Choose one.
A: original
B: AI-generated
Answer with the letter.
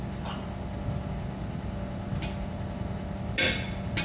A